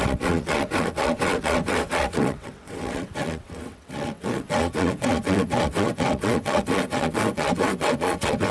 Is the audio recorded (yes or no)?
no